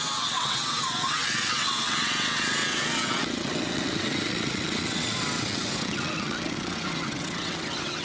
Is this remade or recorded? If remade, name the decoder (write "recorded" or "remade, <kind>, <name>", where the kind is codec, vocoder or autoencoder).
remade, vocoder, WaveNeXt